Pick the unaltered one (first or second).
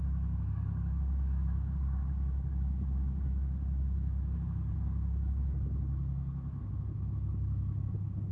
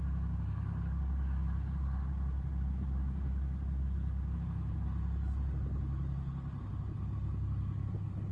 second